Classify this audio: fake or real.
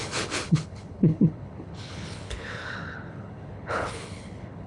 fake